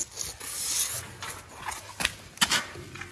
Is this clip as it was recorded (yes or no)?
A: yes